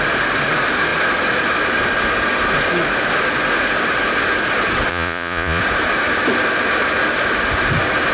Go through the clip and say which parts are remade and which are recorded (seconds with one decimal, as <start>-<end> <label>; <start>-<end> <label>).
0.0-4.9 recorded; 4.9-5.6 remade; 5.6-8.1 recorded